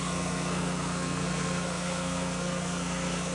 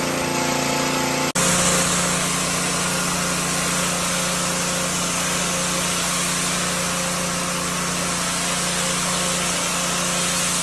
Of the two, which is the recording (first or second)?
second